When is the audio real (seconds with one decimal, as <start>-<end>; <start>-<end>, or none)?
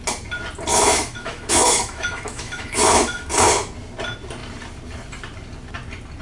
0.0-0.7; 3.3-6.2